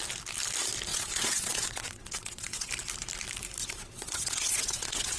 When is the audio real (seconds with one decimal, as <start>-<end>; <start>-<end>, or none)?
0.0-0.9; 2.7-3.6